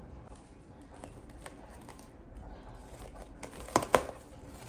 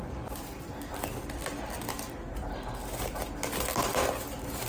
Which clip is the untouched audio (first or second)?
second